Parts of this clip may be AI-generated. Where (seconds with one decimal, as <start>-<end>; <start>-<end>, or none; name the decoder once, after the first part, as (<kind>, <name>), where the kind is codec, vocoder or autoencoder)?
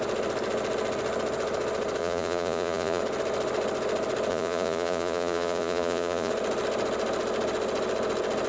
2.0-3.0 (vocoder, Vocos); 4.3-6.3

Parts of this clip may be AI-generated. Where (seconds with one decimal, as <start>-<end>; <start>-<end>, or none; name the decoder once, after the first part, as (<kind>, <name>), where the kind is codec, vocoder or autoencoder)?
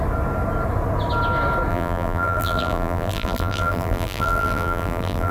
1.7-5.3 (vocoder, BigVGAN v2)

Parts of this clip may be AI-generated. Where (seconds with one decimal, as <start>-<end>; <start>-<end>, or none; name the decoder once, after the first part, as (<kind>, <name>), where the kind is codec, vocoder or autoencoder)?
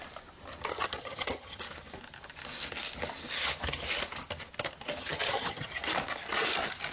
0.7-1.6 (vocoder, HiFi-GAN); 5.0-5.7